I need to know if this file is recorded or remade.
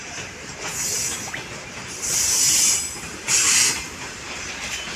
remade